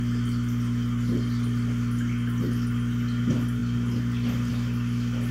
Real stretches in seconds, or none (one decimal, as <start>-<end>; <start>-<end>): 0.0-5.3